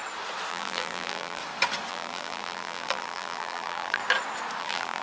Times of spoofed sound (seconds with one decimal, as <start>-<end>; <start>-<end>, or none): 0.5-1.4; 1.9-4.0; 4.6-5.0